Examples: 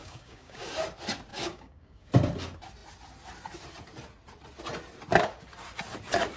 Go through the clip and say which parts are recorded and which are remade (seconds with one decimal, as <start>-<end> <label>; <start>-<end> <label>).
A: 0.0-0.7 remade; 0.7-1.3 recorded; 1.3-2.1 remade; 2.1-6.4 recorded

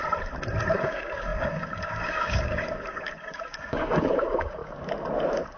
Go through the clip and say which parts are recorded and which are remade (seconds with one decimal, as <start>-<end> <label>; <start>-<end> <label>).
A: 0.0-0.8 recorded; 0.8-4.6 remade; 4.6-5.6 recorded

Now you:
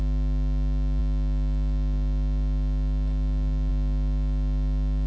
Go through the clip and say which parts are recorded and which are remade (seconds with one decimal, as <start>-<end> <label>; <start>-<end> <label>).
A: 0.0-5.1 recorded

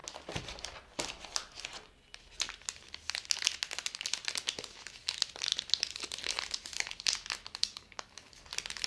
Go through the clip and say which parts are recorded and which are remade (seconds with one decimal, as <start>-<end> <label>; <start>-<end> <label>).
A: 0.0-7.6 recorded; 7.6-8.3 remade; 8.3-8.9 recorded

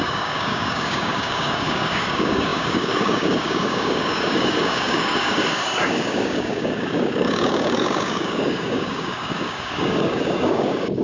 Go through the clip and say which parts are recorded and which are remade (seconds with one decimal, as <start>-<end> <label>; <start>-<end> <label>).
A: 0.0-11.0 remade

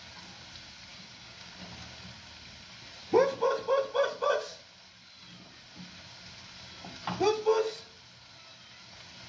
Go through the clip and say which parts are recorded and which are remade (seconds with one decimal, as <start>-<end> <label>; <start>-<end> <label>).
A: 0.0-0.9 recorded; 0.9-1.5 remade; 1.5-9.3 recorded

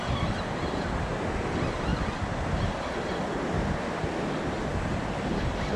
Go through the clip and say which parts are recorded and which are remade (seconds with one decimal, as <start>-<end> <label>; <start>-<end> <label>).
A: 0.0-5.8 recorded

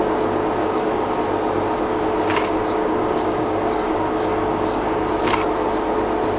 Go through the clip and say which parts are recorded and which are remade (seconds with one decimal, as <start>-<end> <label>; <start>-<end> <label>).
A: 0.0-0.6 recorded; 0.6-1.2 remade; 1.2-1.9 recorded; 1.9-5.1 remade; 5.1-6.4 recorded